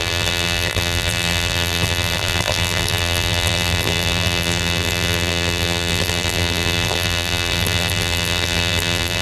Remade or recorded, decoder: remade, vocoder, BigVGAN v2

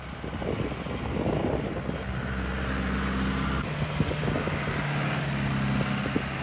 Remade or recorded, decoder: recorded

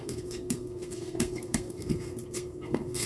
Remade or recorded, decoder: remade, codec, SNAC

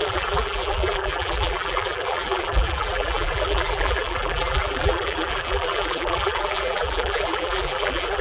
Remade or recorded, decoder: remade, vocoder, BigVGAN v2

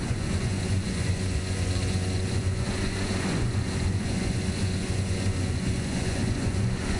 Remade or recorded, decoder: remade, vocoder, Vocos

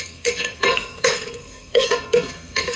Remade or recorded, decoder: remade, codec, SNAC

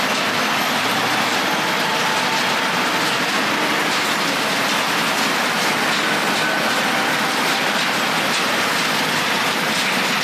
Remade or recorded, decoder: recorded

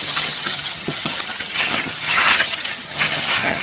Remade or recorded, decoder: remade, vocoder, HiFi-GAN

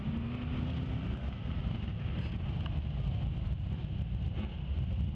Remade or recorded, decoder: recorded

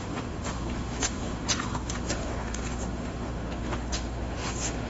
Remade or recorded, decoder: remade, autoencoder, DAC-VAE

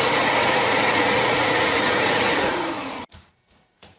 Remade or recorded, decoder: remade, vocoder, Vocos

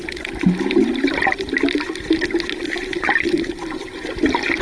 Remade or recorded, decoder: recorded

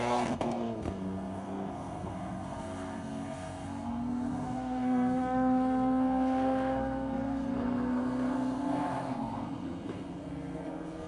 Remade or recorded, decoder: remade, codec, SNAC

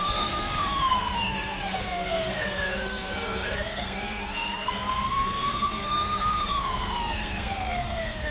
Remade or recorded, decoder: remade, codec, SNAC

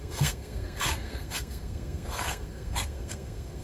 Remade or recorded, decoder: remade, codec, SNAC